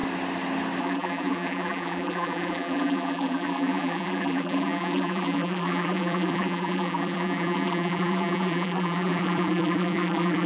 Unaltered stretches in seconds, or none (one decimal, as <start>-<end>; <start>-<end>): 0.0-0.8